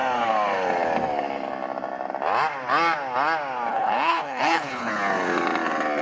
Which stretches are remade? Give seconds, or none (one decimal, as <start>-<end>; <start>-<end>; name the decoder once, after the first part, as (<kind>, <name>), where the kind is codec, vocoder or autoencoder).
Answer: 3.7-4.9 (codec, HILCodec)